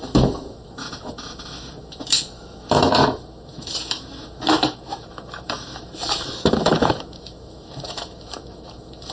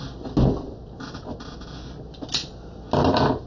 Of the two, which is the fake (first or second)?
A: first